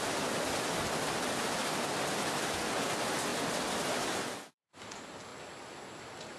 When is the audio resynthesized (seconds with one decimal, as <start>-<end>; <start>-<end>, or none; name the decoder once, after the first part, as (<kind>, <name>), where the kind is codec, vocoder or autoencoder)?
none